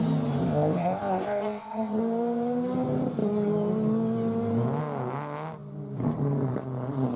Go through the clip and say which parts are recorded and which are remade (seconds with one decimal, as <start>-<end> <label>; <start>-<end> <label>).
0.0-0.4 recorded; 0.4-2.0 remade; 2.0-7.2 recorded